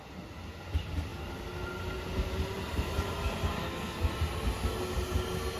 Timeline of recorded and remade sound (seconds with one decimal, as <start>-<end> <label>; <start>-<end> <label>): 0.0-3.6 recorded; 3.6-4.1 remade; 4.1-5.6 recorded